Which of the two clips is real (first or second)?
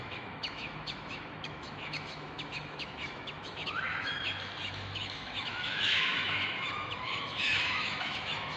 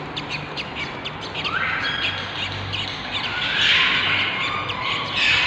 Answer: second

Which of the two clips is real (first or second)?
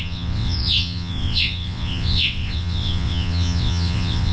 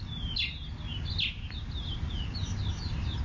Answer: second